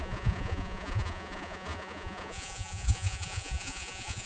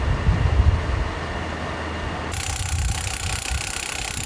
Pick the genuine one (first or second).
second